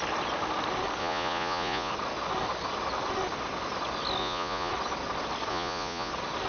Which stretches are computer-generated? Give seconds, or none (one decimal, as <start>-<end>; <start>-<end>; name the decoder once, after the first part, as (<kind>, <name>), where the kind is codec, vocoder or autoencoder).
1.0-1.9 (vocoder, Vocos); 4.2-4.7; 5.5-6.1